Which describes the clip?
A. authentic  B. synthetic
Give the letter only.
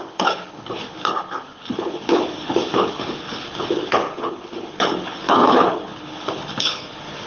B